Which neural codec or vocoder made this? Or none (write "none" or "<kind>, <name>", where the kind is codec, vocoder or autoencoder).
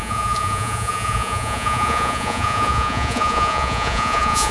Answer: vocoder, Vocos